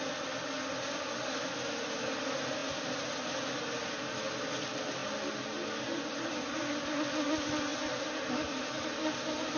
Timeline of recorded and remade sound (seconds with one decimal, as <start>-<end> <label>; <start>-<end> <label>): 0.0-9.6 recorded